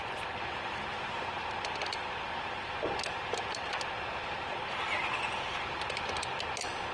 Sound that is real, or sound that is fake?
real